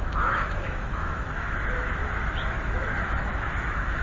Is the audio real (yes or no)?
no